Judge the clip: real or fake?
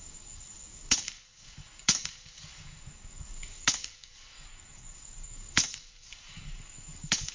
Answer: fake